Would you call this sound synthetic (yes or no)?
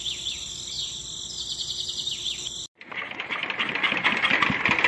no